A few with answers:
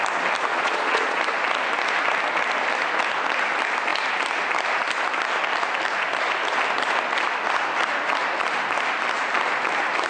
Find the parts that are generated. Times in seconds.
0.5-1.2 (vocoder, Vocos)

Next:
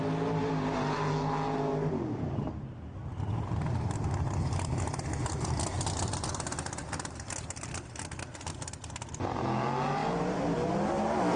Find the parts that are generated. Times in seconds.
none